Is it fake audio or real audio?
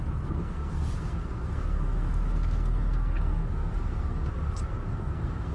fake